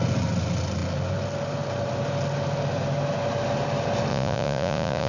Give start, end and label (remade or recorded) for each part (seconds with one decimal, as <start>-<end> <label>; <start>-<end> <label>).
0.0-4.1 recorded; 4.1-5.1 remade